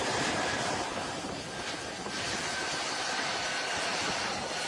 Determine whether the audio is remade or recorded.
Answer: recorded